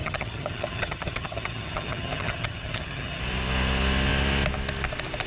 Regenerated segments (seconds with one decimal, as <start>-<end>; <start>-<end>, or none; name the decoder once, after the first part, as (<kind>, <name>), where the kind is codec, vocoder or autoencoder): 0.0-3.2 (vocoder, HiFi-GAN)